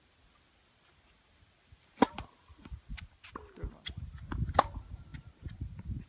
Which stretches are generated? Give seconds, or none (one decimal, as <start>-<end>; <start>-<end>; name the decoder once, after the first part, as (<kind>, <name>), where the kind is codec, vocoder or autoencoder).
none